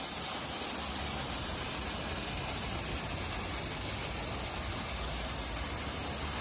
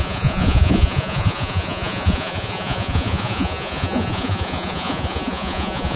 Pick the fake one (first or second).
second